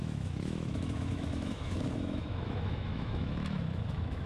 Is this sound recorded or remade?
remade